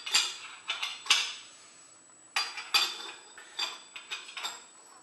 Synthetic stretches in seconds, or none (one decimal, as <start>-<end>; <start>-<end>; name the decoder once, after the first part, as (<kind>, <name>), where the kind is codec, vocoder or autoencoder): 0.9-2.2 (vocoder, BigVGAN v2)